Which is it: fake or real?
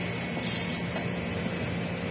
real